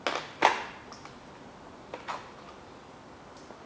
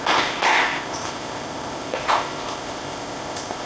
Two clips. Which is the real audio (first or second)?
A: first